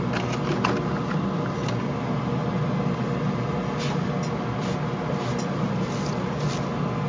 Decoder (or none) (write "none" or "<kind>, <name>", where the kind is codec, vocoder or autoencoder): none